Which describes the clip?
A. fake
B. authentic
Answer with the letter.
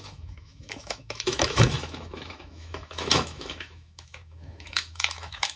A